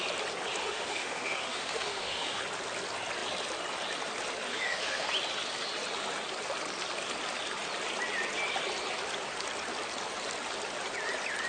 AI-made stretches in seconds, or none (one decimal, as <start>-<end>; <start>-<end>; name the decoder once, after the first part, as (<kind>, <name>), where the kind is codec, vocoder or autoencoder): 0.6-2.4 (autoencoder, DAC-VAE); 4.5-5.1